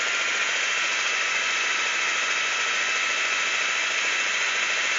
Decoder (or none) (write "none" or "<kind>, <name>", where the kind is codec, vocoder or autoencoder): vocoder, Vocos